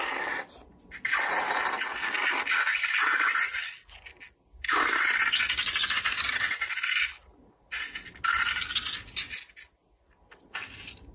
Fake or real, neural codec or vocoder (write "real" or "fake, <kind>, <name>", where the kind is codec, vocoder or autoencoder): real